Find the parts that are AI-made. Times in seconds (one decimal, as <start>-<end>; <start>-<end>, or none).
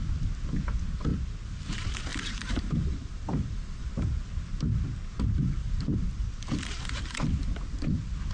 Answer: 2.1-3.9; 5.1-6.5